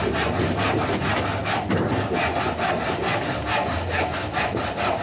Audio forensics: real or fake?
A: real